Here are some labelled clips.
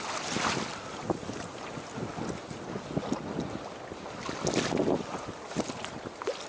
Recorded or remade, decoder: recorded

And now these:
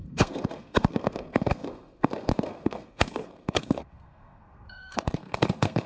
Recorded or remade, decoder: remade, codec, SNAC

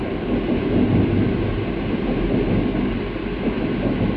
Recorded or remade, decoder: recorded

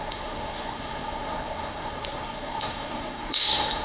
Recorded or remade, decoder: remade, codec, SNAC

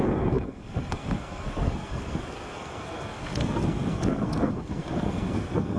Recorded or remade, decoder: remade, codec, SNAC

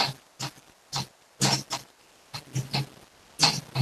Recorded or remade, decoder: recorded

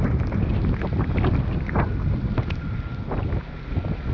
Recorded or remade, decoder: recorded